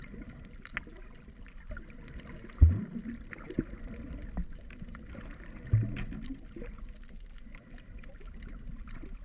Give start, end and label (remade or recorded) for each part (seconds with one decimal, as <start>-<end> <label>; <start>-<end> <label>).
0.0-4.4 recorded; 4.4-5.0 remade; 5.0-9.2 recorded